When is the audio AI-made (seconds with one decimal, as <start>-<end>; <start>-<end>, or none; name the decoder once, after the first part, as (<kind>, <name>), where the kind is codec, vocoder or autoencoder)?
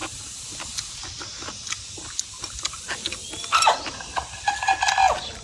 none